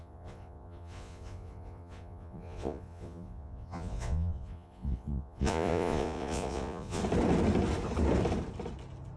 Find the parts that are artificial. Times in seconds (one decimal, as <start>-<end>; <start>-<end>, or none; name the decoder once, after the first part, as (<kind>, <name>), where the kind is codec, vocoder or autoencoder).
0.0-7.0 (vocoder, Vocos)